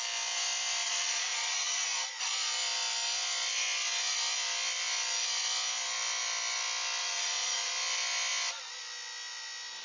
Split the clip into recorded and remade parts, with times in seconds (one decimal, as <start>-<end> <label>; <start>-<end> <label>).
0.0-0.8 recorded; 0.8-1.9 remade; 1.9-7.0 recorded; 7.0-7.7 remade; 7.7-9.8 recorded